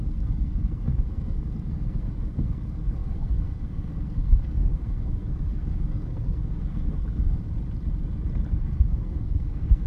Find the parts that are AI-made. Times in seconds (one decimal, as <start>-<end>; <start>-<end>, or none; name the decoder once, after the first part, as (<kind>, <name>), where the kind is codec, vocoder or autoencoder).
0.0-7.4 (codec, SNAC); 8.5-9.9